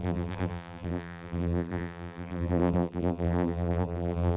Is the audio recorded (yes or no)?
no